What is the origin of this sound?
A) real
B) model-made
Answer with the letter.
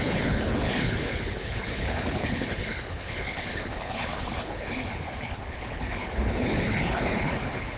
B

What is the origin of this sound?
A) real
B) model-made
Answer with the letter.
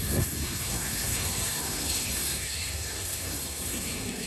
B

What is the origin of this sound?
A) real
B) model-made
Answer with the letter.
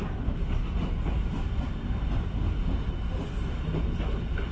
A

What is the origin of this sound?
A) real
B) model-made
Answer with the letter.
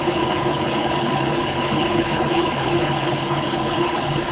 B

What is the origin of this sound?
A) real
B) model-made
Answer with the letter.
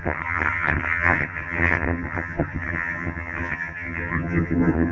B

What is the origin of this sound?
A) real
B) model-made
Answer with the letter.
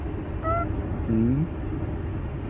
A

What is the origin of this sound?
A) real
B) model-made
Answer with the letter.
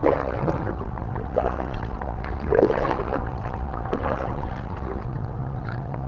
B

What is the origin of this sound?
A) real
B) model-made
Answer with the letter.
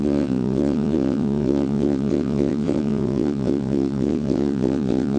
B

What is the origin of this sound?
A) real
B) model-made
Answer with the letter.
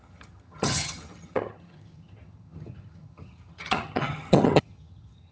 B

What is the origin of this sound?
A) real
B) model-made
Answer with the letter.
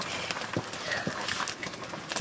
A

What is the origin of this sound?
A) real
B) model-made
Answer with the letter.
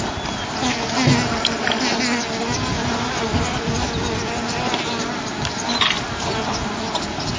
A